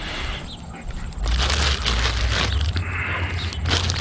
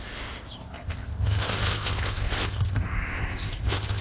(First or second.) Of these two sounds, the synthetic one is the second